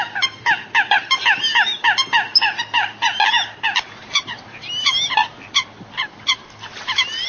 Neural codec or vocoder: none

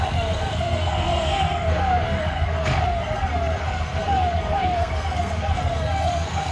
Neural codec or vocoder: codec, SNAC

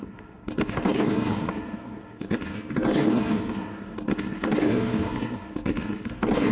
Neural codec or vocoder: codec, SNAC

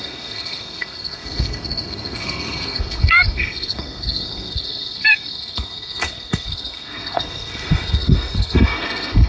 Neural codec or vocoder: codec, SNAC